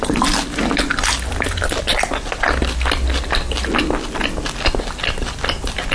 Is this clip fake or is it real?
real